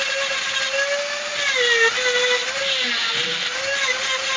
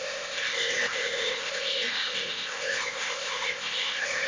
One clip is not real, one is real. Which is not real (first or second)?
second